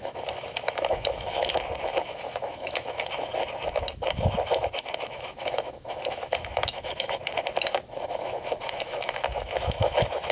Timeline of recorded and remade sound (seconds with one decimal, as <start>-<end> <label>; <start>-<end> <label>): 0.0-1.4 remade; 1.4-2.0 recorded; 2.0-3.3 remade; 3.3-4.8 recorded; 4.8-7.2 remade; 7.2-7.8 recorded; 7.8-10.3 remade